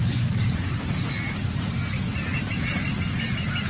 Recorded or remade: recorded